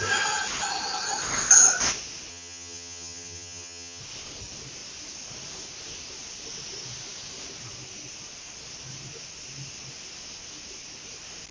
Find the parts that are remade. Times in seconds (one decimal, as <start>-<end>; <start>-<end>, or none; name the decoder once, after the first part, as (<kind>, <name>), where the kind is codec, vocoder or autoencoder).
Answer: 2.3-4.0 (vocoder, HiFi-GAN)